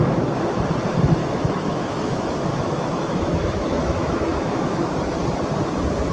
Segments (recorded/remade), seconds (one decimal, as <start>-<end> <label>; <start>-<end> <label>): 0.0-0.6 remade; 0.6-1.2 recorded; 1.2-4.9 remade; 4.9-6.1 recorded